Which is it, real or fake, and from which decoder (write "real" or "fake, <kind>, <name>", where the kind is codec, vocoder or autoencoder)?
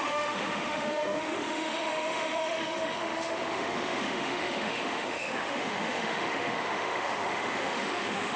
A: fake, autoencoder, DAC-VAE